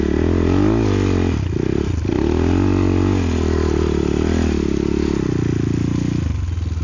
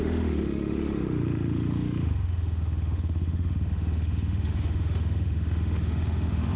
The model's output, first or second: second